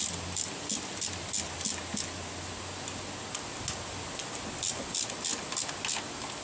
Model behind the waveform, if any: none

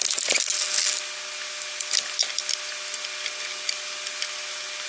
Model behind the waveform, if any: none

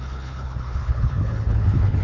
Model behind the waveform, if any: codec, HILCodec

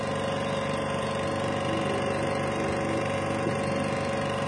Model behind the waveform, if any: none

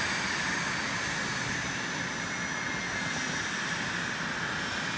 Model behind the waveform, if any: none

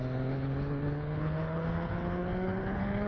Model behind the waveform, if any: codec, HILCodec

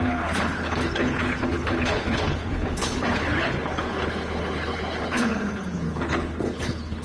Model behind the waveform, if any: codec, HILCodec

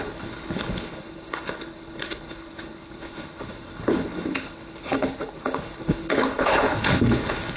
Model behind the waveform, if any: codec, HILCodec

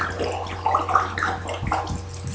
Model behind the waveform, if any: none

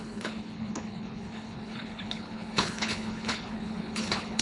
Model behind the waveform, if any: codec, HILCodec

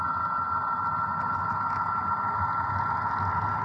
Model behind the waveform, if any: none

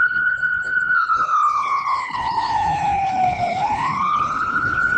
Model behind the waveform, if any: codec, HILCodec